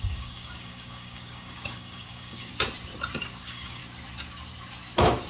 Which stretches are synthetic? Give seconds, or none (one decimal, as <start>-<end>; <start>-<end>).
0.0-2.5; 3.4-3.8